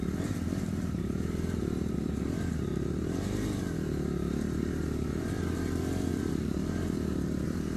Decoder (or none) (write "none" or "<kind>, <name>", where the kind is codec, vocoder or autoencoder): vocoder, BigVGAN v2